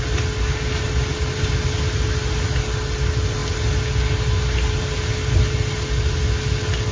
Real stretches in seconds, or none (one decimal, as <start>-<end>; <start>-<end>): 0.0-6.9